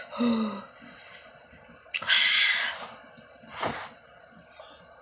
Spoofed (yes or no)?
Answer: no